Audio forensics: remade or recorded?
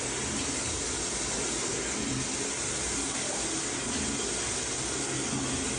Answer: recorded